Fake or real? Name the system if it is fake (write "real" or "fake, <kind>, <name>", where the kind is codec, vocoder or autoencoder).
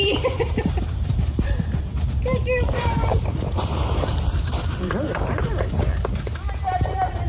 fake, vocoder, BigVGAN v2